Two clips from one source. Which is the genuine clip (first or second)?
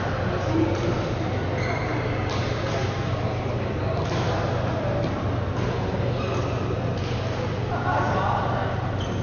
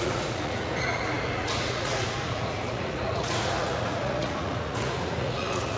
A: first